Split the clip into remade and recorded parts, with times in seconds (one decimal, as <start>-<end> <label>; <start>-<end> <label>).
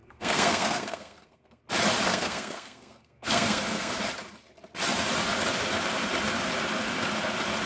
0.0-1.6 remade; 1.6-2.1 recorded; 2.1-3.9 remade; 3.9-7.7 recorded